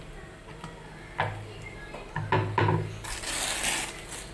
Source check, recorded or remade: recorded